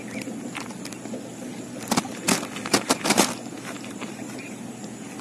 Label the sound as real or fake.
real